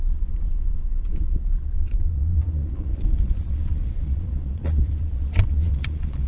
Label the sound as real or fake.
fake